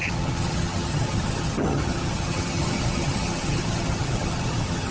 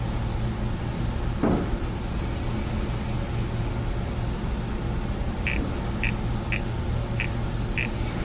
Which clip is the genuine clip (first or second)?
second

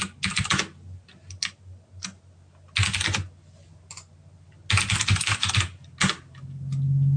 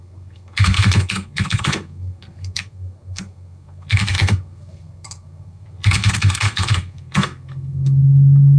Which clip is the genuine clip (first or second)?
first